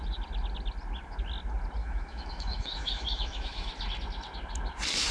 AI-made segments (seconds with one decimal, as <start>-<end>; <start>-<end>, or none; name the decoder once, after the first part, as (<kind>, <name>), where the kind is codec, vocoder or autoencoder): 1.8-3.7 (autoencoder, DAC-VAE)